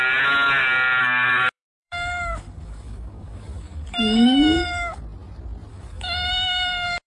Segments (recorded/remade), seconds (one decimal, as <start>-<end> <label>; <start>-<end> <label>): 0.0-1.0 recorded; 1.0-5.0 remade; 5.0-5.7 recorded; 5.7-7.1 remade